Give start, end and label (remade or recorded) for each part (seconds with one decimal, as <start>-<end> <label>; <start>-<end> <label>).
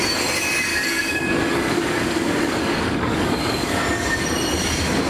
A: 0.0-0.7 recorded; 0.7-3.8 remade; 3.8-5.1 recorded